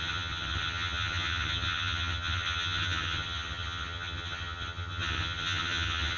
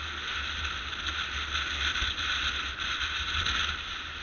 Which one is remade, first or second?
first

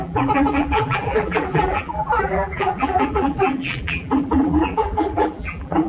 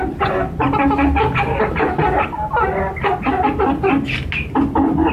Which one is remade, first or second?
first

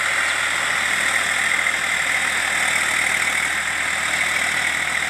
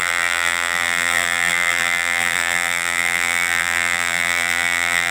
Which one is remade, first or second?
second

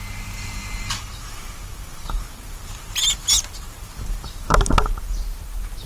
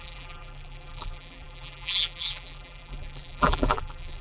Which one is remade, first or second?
second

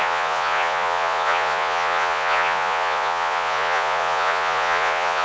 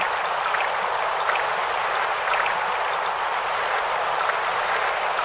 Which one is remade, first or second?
first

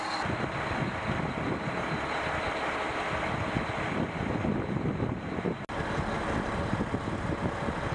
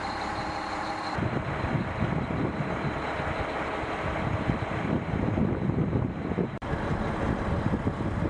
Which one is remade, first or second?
second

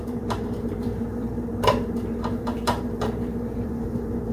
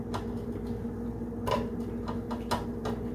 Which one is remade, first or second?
first